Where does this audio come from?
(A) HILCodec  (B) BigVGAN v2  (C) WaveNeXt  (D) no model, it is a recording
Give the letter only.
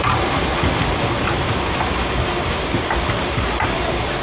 D